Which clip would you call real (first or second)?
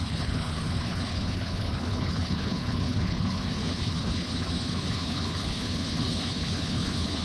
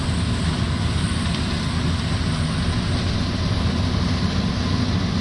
second